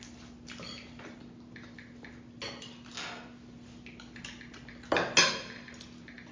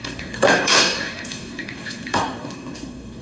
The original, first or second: first